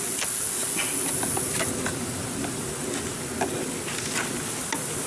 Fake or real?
real